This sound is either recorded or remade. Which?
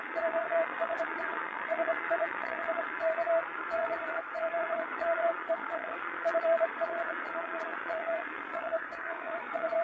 remade